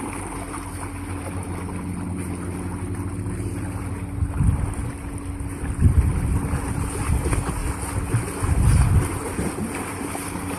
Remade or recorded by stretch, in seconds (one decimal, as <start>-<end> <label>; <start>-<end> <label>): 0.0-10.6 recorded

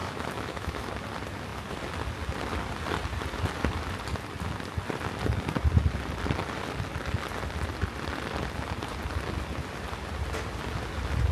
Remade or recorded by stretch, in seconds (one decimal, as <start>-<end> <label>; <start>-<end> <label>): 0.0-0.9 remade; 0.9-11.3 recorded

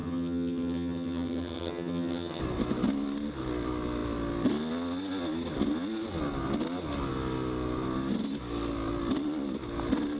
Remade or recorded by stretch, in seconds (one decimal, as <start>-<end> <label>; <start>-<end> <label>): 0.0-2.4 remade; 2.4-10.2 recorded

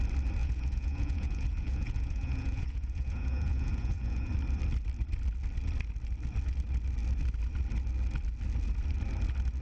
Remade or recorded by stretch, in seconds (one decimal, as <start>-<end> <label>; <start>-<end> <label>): 0.0-0.4 recorded; 0.4-4.3 remade; 4.3-9.6 recorded

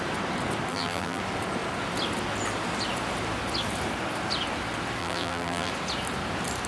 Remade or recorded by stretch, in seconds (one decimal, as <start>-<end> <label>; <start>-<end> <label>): 0.0-0.7 recorded; 0.7-1.2 remade; 1.2-5.0 recorded; 5.0-5.7 remade; 5.7-6.7 recorded

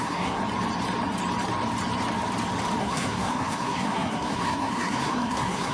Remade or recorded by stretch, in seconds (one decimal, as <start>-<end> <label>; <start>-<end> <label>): 0.0-0.4 remade; 0.4-2.8 recorded; 2.8-5.7 remade

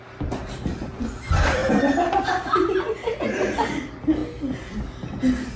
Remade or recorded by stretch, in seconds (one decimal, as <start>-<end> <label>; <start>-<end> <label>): 0.0-5.6 recorded

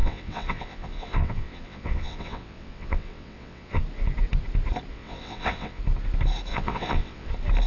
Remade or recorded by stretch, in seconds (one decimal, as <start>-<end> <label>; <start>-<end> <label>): 0.0-3.8 remade; 3.8-4.9 recorded; 4.9-5.8 remade; 5.8-6.5 recorded; 6.5-7.3 remade; 7.3-7.7 recorded